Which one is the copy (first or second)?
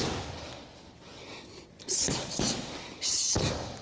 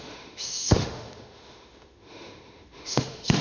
second